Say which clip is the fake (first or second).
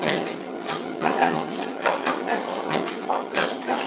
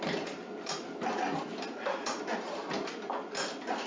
first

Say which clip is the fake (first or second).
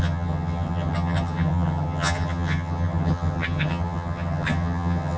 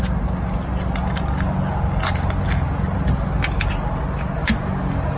first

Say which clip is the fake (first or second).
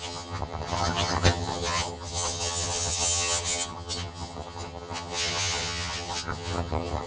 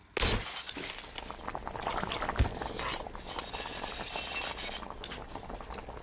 first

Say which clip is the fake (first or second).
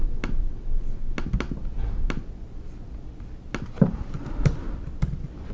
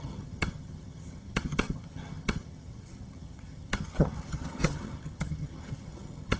second